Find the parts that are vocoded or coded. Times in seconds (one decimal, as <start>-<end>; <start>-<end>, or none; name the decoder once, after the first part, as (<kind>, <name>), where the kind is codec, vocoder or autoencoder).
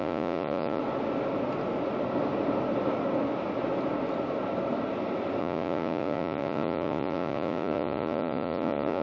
0.0-0.8 (vocoder, Vocos); 5.4-9.0